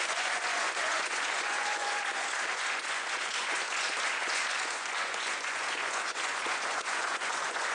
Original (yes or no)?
no